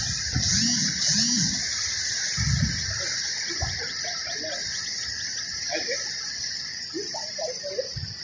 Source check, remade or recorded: recorded